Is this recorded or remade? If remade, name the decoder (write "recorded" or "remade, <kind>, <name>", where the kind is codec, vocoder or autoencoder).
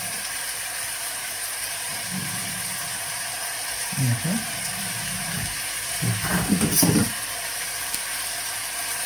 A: remade, vocoder, BigVGAN v2